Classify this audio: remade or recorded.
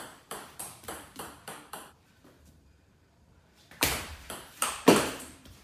remade